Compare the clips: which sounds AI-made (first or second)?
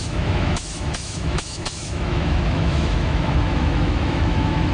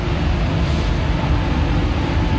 first